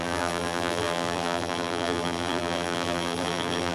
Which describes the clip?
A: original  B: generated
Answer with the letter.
B